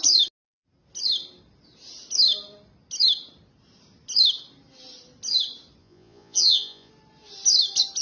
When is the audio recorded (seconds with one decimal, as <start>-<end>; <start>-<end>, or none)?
0.0-5.8; 6.9-8.0